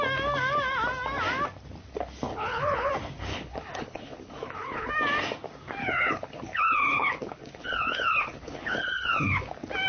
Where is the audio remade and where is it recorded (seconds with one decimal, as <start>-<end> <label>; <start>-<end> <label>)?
0.0-2.3 recorded; 2.3-2.9 remade; 2.9-3.3 recorded; 3.3-4.9 remade; 4.9-5.8 recorded; 5.8-9.5 remade; 9.5-9.9 recorded